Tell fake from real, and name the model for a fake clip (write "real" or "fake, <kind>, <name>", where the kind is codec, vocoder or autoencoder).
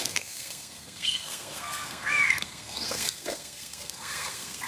fake, codec, SNAC